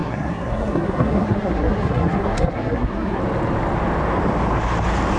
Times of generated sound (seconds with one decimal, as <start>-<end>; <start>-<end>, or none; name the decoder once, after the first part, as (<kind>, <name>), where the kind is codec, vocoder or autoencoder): 0.0-3.2 (codec, SNAC)